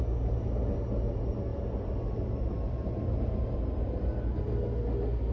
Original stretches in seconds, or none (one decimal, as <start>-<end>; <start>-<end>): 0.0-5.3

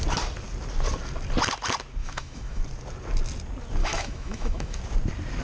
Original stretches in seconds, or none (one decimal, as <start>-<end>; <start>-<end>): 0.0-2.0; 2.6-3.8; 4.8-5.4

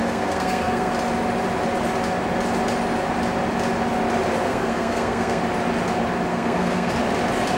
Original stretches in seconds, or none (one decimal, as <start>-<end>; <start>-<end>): 0.9-4.5; 5.4-6.3; 6.9-7.6

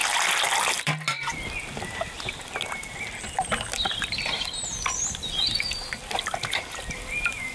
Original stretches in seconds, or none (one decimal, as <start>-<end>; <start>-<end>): 0.0-7.5

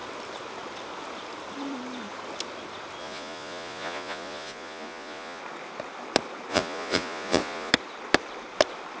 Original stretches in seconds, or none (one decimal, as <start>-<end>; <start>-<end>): 0.0-3.0; 5.4-6.5; 7.7-9.0

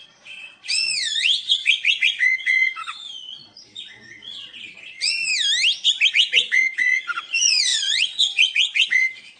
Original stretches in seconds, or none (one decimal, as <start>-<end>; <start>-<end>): 5.3-6.1